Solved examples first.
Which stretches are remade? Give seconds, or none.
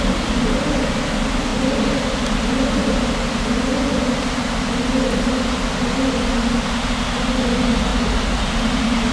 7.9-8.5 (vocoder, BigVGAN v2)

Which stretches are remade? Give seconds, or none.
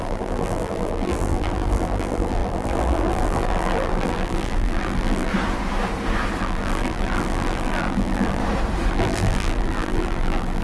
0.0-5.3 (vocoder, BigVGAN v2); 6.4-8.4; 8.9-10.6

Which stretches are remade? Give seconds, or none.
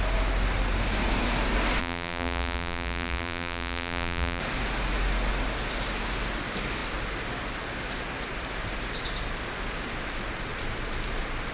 1.8-4.4 (vocoder, BigVGAN v2)